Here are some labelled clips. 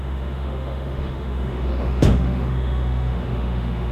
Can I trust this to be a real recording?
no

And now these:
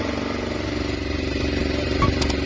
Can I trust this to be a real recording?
no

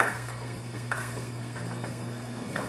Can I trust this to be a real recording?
no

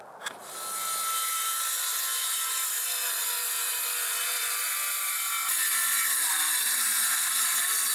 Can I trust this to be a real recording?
yes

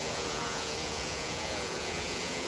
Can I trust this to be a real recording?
no